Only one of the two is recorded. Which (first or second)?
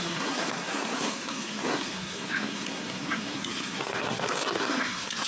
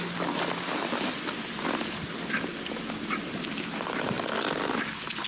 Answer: second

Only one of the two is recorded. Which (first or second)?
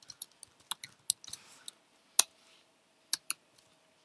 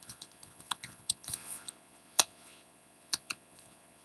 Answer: first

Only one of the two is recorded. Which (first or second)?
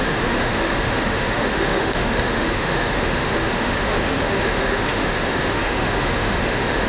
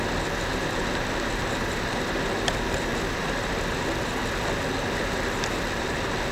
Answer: second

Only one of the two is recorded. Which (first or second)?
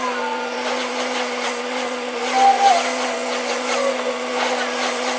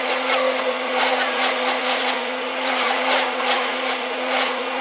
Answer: first